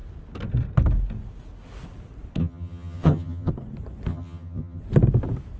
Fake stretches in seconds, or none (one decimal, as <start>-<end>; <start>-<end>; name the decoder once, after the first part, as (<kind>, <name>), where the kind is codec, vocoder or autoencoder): 2.4-3.5 (vocoder, HiFi-GAN); 4.1-4.8